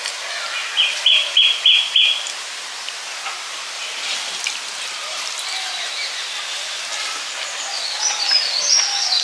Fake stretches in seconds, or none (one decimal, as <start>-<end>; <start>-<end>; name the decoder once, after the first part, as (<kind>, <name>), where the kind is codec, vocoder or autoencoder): none